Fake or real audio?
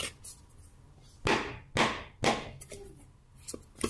real